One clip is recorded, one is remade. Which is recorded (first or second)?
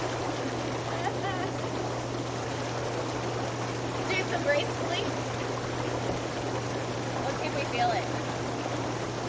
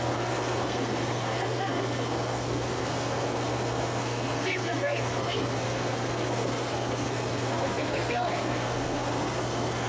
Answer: first